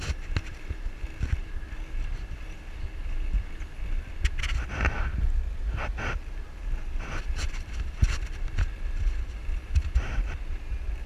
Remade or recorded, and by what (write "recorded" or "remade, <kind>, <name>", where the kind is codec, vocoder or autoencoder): recorded